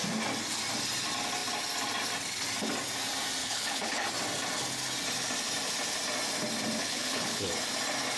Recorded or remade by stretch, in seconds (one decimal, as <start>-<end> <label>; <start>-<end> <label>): 0.0-3.4 recorded; 3.4-4.1 remade; 4.1-6.8 recorded; 6.8-7.5 remade; 7.5-8.2 recorded